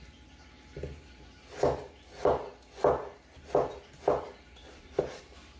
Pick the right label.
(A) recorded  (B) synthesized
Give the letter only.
A